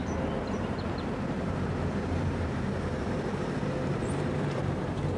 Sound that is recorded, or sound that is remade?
remade